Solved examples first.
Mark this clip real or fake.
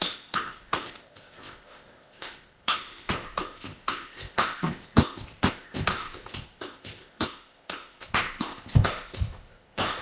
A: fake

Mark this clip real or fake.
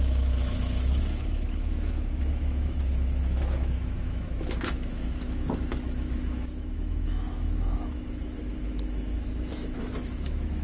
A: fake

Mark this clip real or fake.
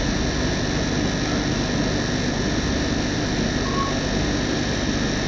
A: real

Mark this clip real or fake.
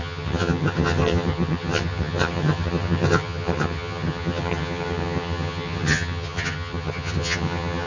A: fake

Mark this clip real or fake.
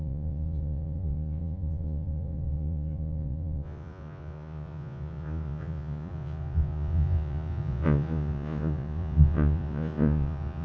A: fake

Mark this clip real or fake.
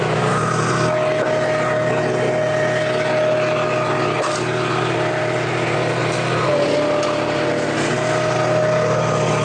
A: real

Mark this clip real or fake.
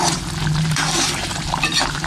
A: fake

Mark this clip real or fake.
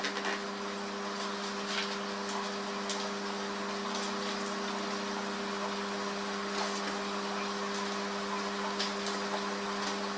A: real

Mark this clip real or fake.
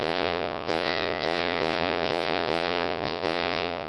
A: fake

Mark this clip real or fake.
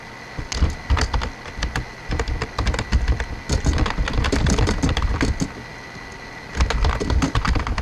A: real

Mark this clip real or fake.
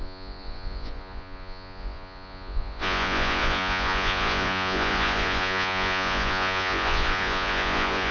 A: fake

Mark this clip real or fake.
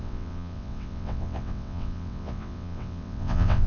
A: fake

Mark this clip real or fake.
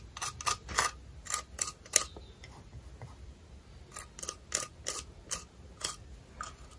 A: real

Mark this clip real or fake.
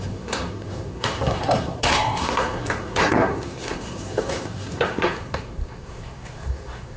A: fake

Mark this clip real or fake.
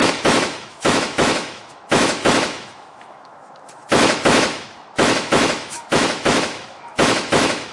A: fake